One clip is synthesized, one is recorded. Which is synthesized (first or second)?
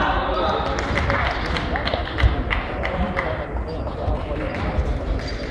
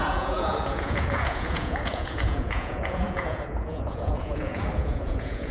second